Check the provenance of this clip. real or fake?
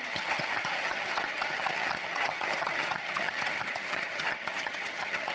fake